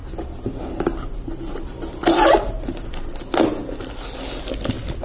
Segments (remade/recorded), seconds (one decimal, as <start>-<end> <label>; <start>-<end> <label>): 0.0-5.0 recorded